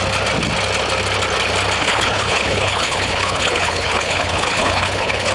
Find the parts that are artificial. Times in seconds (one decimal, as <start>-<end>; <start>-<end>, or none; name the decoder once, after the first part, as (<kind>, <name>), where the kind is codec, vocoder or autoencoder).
1.8-5.3 (codec, HILCodec)